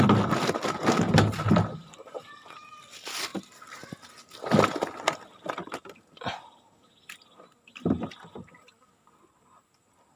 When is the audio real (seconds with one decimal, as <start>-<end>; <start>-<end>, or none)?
0.0-1.8; 2.6-10.2